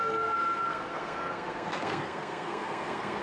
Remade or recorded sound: remade